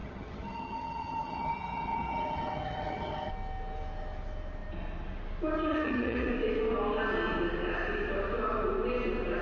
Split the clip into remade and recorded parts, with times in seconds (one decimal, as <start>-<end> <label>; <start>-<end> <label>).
0.0-3.3 remade; 3.3-5.7 recorded; 5.7-6.3 remade; 6.3-9.4 recorded